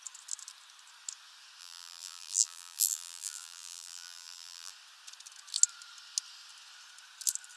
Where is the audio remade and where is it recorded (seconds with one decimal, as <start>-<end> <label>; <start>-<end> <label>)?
0.0-1.6 recorded; 1.6-4.7 remade; 4.7-7.6 recorded